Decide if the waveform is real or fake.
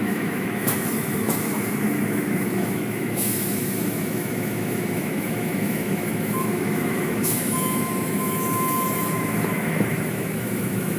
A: fake